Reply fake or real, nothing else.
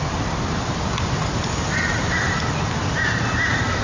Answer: real